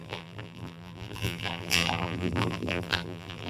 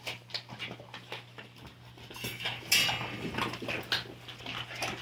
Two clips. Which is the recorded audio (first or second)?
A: second